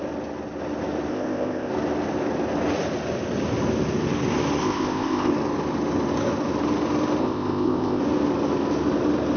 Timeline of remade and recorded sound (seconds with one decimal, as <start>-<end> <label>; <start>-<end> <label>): 0.0-1.1 recorded; 1.1-1.7 remade; 1.7-4.6 recorded; 4.6-5.3 remade; 5.3-7.2 recorded; 7.2-8.0 remade; 8.0-9.4 recorded

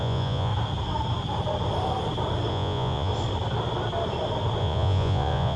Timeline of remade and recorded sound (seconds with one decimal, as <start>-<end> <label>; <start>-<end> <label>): 0.0-0.5 remade; 0.5-2.5 recorded; 2.5-3.1 remade; 3.1-4.6 recorded; 4.6-5.6 remade

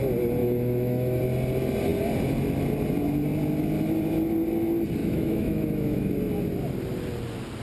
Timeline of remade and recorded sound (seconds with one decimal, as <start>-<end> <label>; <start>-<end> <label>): 0.0-0.4 recorded; 0.4-1.2 remade; 1.2-5.0 recorded; 5.0-6.1 remade; 6.1-7.6 recorded

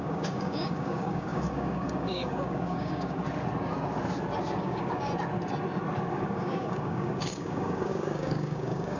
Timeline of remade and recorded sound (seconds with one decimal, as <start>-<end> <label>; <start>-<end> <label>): 0.0-3.2 remade; 3.2-4.6 recorded; 4.6-5.1 remade; 5.1-6.1 recorded; 6.1-9.0 remade

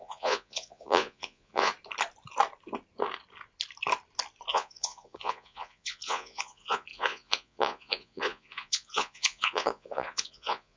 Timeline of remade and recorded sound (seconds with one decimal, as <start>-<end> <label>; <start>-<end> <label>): 0.0-1.7 remade; 1.7-4.5 recorded; 4.5-10.8 remade